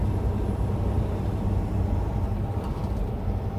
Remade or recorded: recorded